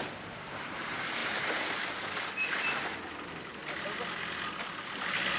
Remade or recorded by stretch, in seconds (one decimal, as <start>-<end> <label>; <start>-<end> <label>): 0.0-5.4 recorded